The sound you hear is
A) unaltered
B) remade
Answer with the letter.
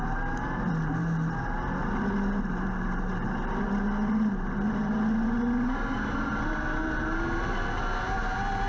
A